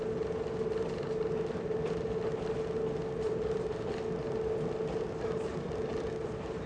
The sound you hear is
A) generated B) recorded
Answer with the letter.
B